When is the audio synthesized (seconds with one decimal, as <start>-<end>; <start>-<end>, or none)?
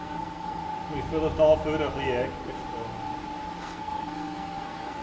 0.0-0.6; 3.6-5.0